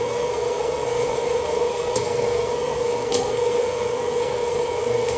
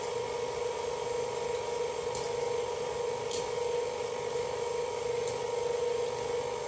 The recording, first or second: second